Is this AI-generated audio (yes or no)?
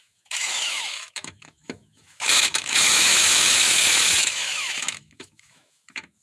yes